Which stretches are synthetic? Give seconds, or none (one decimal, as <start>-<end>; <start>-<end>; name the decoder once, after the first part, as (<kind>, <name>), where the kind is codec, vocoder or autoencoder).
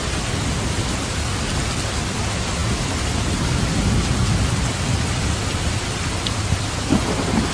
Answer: none